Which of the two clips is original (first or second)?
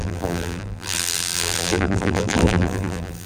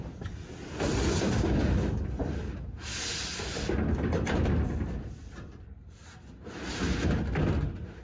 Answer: second